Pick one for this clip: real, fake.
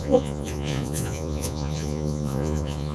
fake